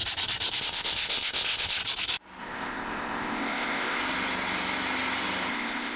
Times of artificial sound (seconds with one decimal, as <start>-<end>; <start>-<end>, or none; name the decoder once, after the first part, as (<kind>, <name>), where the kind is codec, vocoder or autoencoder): 0.6-1.8 (codec, ZipCodec); 2.4-4.0; 5.5-6.0